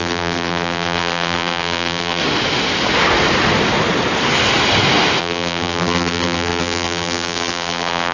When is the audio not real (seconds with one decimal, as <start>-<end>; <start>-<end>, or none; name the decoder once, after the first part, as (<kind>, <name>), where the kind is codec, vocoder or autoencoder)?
0.0-2.2 (vocoder, BigVGAN v2); 5.2-8.1